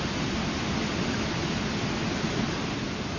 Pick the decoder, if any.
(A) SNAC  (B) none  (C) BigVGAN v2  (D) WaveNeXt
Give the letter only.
B